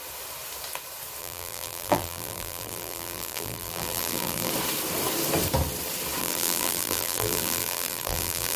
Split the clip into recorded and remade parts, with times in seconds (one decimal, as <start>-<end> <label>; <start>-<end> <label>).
0.0-1.2 recorded; 1.2-4.5 remade; 4.5-6.2 recorded; 6.2-8.6 remade